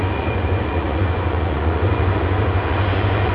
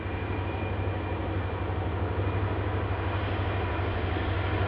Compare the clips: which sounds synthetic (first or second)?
first